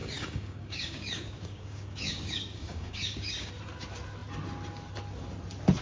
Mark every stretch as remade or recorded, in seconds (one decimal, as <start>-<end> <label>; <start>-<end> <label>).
0.0-3.5 remade; 3.5-5.8 recorded